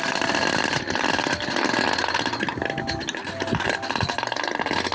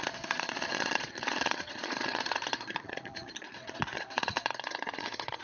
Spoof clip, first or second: second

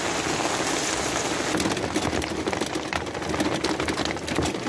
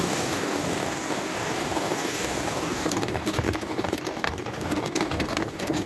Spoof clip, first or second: second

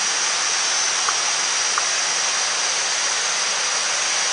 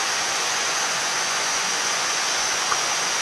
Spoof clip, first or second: second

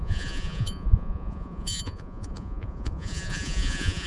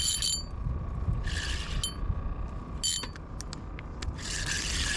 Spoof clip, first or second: first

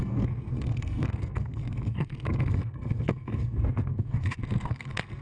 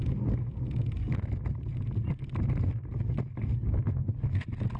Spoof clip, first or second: first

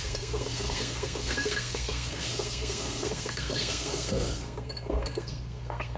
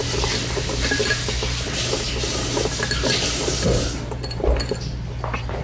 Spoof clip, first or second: first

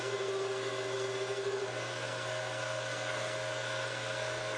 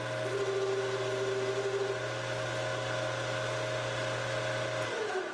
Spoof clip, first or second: first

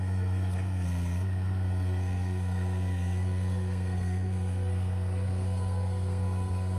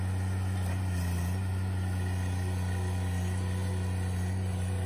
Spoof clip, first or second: first